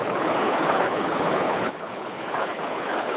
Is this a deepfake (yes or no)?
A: yes